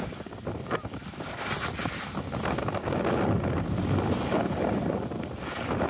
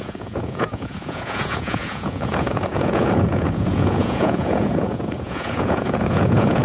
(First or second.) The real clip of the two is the first